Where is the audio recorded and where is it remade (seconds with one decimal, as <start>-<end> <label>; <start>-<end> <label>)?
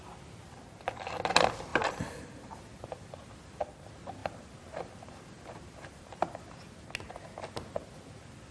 0.0-1.7 recorded; 1.7-2.6 remade; 2.6-4.2 recorded; 4.2-6.6 remade; 6.6-8.5 recorded